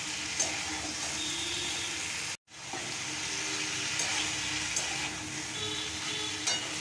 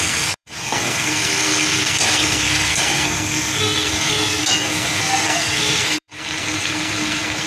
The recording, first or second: first